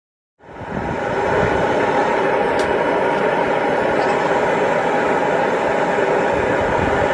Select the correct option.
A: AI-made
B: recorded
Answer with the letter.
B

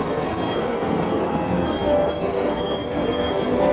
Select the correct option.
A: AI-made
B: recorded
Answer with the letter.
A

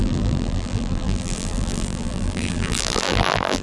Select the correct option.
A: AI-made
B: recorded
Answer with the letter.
A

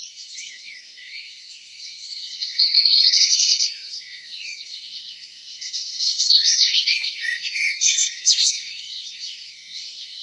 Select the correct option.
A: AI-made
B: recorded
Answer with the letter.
A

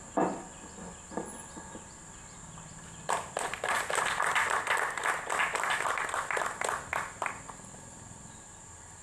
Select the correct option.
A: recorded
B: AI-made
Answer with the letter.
A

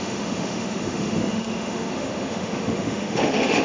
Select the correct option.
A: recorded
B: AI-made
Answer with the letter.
B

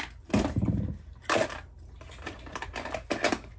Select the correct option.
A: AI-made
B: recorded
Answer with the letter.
B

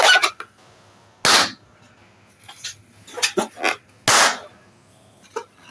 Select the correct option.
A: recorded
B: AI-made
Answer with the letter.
A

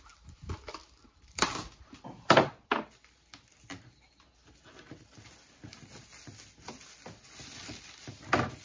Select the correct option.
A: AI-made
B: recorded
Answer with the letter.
B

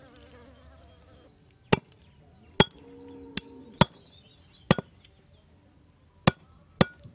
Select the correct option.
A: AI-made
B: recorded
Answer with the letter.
B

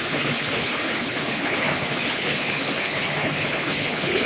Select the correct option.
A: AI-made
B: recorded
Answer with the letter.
A